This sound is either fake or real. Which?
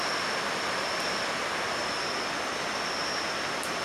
real